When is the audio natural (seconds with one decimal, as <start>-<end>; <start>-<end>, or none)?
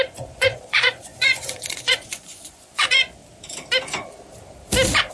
3.2-5.1